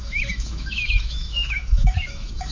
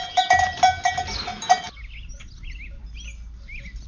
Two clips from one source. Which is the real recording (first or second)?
second